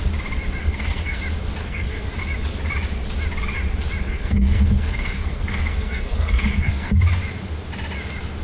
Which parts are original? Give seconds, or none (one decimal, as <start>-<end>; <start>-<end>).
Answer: 0.0-0.6; 1.2-1.6; 2.2-4.0; 6.9-8.4